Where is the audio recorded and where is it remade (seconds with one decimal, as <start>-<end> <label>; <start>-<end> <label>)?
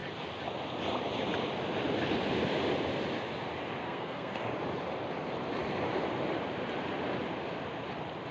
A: 0.0-3.8 recorded; 3.8-4.4 remade; 4.4-8.3 recorded